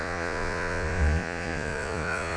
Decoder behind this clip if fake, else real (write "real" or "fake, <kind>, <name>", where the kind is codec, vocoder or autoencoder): fake, vocoder, Vocos